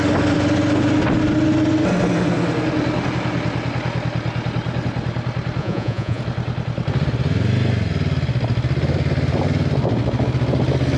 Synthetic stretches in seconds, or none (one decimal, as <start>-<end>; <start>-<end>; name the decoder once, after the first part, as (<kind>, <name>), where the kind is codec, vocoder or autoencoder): 5.6-6.2 (vocoder, Vocos)